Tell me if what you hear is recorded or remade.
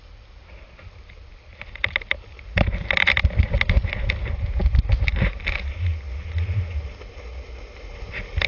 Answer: recorded